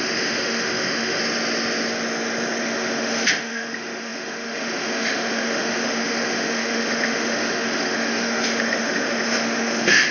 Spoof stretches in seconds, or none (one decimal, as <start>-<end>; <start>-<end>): 0.0-1.2; 2.6-10.1